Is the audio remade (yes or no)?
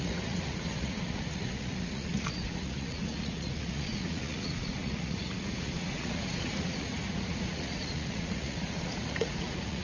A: yes